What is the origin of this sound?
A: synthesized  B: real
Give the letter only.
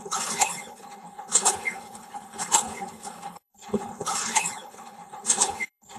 A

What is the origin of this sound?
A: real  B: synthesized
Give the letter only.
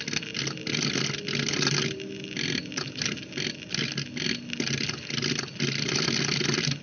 A